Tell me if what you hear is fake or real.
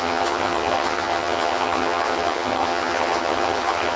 fake